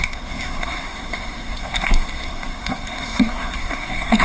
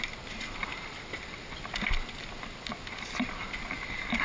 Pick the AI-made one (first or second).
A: first